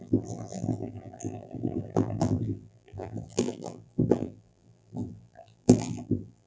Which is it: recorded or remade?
remade